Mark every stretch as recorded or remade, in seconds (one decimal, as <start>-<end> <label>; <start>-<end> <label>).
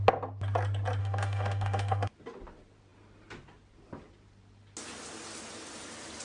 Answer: 0.0-1.0 recorded; 1.0-2.1 remade; 2.1-6.2 recorded